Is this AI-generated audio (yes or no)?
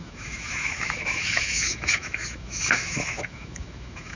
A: yes